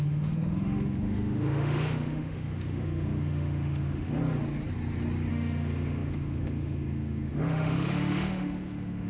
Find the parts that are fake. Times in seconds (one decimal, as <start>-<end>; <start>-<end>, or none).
0.0-4.2; 5.3-9.1